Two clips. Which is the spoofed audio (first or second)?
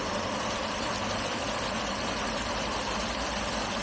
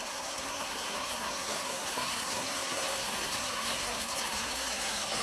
second